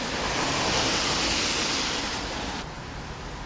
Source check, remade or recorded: recorded